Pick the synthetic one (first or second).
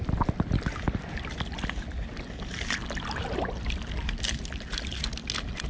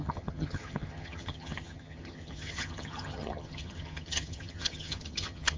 second